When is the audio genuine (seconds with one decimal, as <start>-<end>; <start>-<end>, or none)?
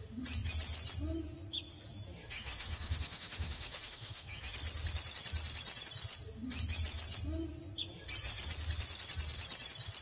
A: 0.0-2.2; 4.5-10.0